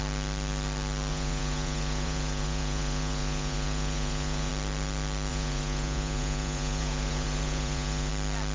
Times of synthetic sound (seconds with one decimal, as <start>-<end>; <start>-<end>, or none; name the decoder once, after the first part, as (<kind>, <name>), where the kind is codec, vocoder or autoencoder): 1.1-4.5 (vocoder, Vocos); 5.3-8.1